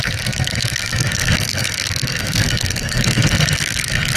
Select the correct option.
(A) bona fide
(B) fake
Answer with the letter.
B